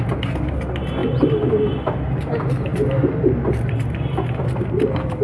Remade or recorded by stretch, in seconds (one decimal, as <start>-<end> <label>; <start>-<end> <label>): 0.0-2.7 recorded; 2.7-3.7 remade; 3.7-5.2 recorded